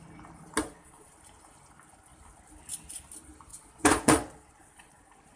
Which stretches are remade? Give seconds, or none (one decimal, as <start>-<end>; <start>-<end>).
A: 0.6-1.1; 3.5-5.0